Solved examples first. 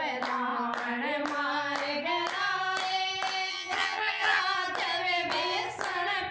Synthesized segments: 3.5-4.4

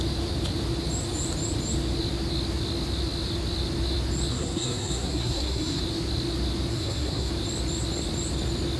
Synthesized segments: 4.3-5.8; 6.7-7.3

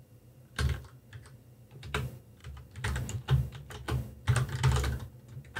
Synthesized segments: 0.0-0.6; 1.2-2.4